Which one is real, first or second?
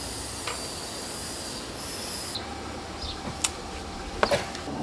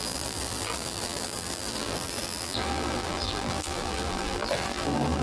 first